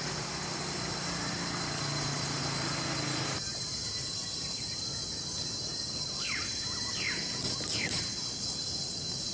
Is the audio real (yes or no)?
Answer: yes